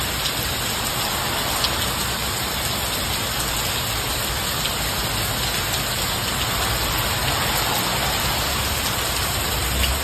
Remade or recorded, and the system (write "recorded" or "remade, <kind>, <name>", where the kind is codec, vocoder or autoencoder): recorded